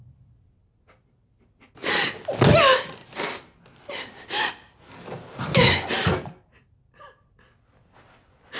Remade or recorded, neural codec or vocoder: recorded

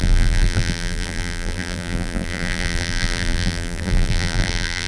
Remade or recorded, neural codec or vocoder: remade, vocoder, BigVGAN v2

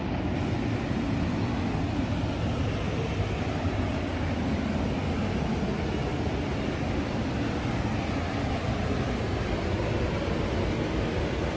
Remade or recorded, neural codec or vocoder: recorded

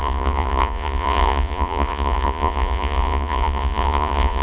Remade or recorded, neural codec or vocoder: remade, vocoder, Vocos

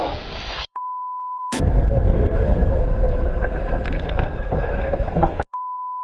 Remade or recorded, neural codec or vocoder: remade, codec, SNAC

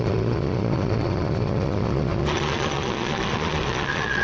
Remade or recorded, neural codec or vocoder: remade, vocoder, Vocos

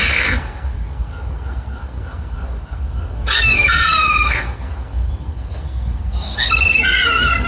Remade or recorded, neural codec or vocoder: remade, codec, SNAC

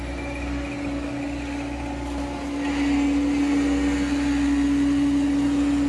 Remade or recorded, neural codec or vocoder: recorded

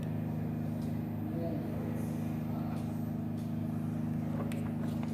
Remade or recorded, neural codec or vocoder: recorded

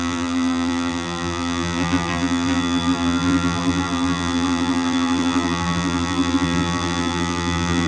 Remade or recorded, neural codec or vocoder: remade, vocoder, BigVGAN v2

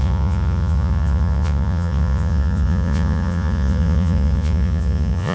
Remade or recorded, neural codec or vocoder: remade, vocoder, Vocos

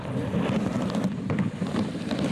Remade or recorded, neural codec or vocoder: remade, vocoder, BigVGAN v2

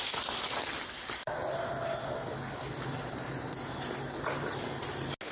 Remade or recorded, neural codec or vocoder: recorded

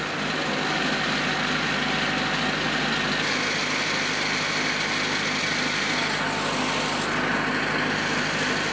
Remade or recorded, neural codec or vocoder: recorded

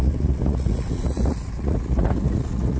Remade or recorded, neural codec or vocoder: remade, vocoder, Vocos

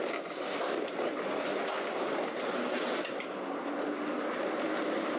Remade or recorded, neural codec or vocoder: recorded